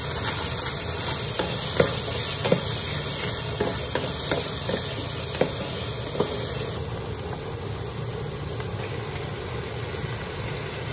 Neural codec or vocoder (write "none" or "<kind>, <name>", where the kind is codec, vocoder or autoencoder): none